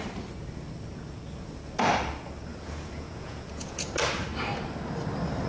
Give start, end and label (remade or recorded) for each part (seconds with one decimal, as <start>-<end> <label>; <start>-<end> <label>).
0.0-2.5 recorded; 2.5-3.9 remade; 3.9-5.5 recorded